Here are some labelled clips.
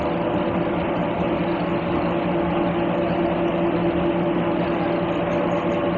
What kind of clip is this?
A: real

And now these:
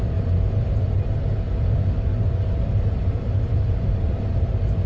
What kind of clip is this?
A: fake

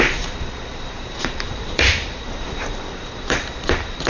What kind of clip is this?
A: fake